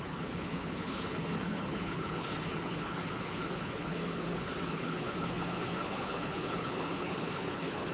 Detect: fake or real fake